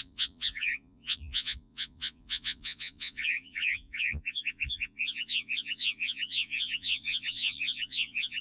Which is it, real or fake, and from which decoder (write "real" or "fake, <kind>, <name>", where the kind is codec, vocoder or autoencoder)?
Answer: fake, vocoder, Vocos